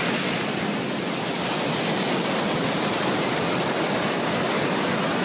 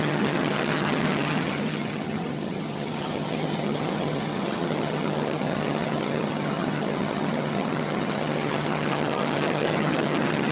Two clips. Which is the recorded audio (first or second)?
first